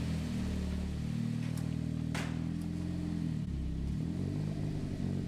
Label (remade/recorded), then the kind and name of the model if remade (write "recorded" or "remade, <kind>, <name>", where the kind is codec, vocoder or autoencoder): recorded